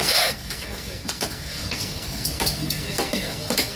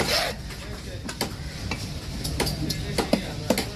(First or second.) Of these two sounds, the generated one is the first